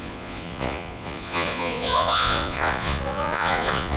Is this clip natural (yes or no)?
no